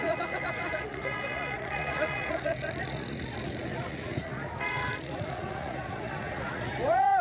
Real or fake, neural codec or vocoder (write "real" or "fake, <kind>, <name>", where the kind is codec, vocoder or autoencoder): fake, vocoder, Vocos